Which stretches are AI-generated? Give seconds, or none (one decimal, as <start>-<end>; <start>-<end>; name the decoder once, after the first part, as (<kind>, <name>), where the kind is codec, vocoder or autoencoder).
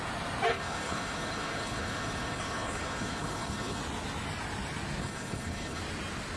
0.5-3.8 (codec, HILCodec); 5.0-5.8